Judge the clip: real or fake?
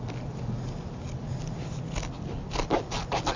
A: real